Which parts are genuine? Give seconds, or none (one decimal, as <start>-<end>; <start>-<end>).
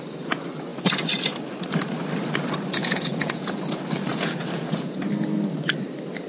0.0-2.8; 3.5-4.1; 5.0-6.3